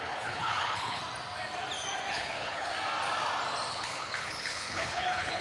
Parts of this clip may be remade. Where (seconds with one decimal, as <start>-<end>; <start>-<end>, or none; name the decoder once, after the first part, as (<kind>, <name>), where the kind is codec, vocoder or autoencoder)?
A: 0.0-1.0 (codec, HILCodec); 2.1-2.7; 3.7-5.4